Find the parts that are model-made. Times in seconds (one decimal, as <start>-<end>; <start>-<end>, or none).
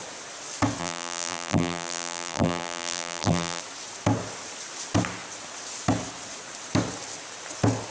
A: 0.8-3.6